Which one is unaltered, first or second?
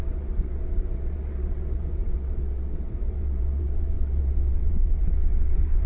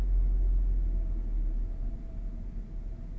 second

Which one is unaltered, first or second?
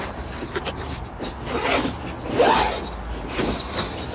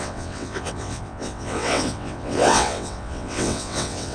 first